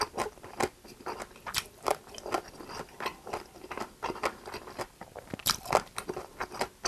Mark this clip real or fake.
real